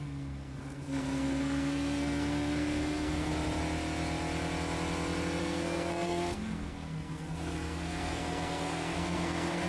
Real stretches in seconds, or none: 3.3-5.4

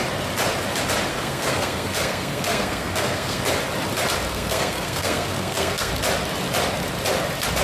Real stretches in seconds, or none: 0.0-1.1; 3.4-4.3; 5.9-7.6

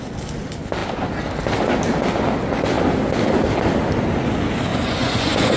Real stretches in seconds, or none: 0.0-4.7

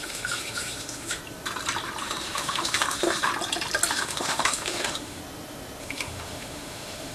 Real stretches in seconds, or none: 1.2-2.0; 3.3-3.9; 5.2-5.8

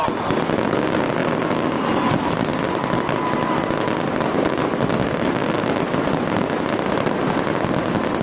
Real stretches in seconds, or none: 0.0-8.2

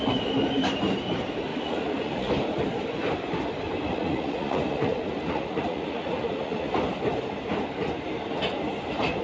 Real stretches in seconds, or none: 0.0-1.5; 2.3-3.9; 6.7-9.2